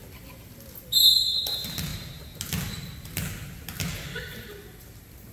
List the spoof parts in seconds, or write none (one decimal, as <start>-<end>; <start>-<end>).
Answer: none